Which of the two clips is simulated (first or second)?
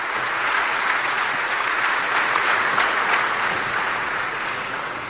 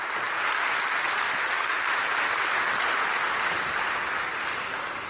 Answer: first